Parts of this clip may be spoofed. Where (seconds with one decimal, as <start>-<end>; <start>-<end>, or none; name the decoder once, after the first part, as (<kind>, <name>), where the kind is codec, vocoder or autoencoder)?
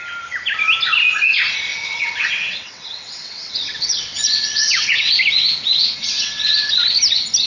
1.7-5.1 (vocoder, WaveNeXt); 5.8-6.7